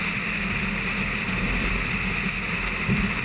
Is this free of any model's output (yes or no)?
yes